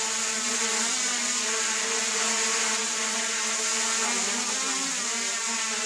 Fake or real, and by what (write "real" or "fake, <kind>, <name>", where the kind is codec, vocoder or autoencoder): real